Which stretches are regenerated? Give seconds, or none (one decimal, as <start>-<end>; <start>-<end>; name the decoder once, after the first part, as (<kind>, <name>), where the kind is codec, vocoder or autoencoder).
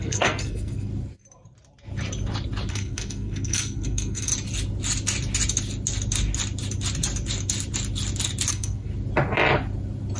0.0-0.9 (codec, SNAC); 2.7-4.3; 8.5-8.9